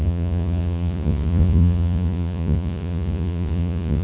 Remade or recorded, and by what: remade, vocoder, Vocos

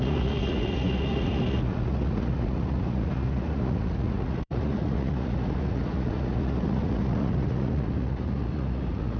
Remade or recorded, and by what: remade, vocoder, Vocos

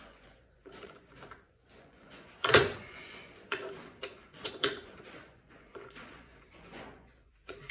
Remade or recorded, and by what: remade, vocoder, Vocos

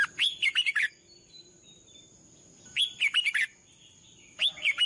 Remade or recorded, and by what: remade, vocoder, BigVGAN v2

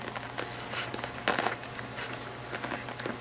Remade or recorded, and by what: recorded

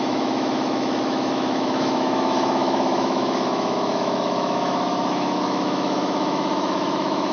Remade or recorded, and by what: remade, autoencoder, DAC-VAE